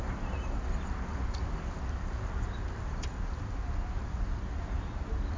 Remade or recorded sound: recorded